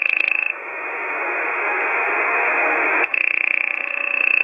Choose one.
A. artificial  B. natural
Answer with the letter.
A